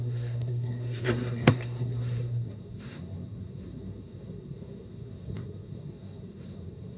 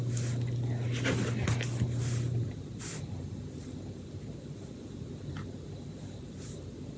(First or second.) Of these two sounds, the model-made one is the first